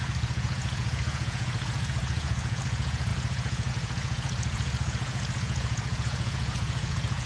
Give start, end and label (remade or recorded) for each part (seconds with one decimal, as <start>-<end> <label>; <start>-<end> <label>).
0.0-7.3 remade